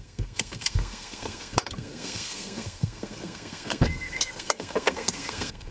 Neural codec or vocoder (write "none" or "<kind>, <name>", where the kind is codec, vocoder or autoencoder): codec, SNAC